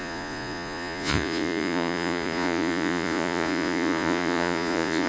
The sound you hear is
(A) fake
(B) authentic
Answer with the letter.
A